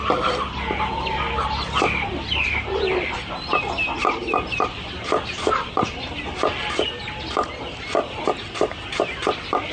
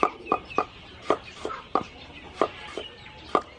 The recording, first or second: first